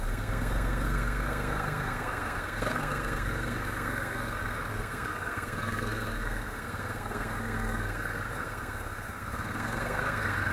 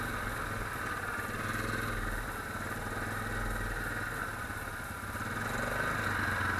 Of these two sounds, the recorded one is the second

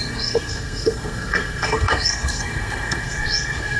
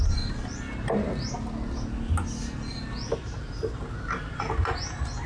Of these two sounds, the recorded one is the second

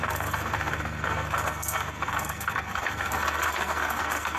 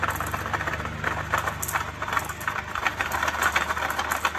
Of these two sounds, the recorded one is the second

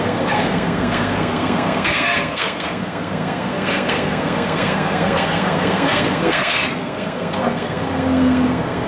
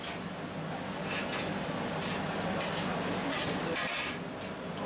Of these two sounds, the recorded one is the second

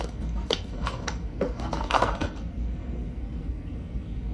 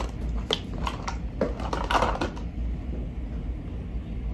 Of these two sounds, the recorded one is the second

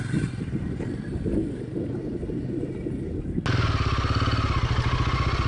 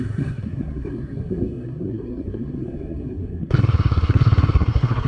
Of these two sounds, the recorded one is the first